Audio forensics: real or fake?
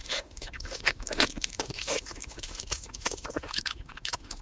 fake